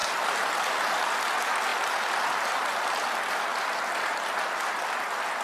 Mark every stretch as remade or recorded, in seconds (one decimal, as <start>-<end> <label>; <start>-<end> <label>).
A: 0.0-5.4 recorded